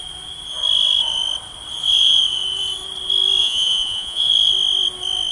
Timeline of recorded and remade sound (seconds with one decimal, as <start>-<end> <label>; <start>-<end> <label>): 0.0-3.4 recorded; 3.4-4.3 remade; 4.3-5.3 recorded